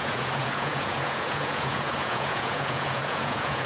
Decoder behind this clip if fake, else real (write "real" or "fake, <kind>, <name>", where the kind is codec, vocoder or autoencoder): fake, vocoder, Vocos